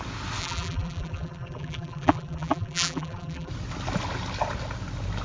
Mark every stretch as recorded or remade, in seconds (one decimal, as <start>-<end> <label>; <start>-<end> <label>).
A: 0.0-0.4 recorded; 0.4-3.5 remade; 3.5-5.2 recorded